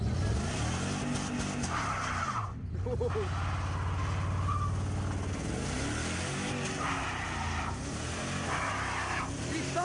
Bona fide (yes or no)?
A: yes